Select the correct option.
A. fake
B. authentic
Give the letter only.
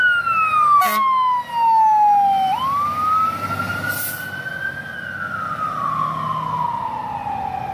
B